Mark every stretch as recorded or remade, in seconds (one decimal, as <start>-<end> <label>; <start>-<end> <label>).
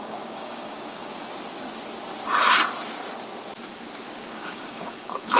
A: 0.0-1.1 remade; 1.1-4.3 recorded; 4.3-5.4 remade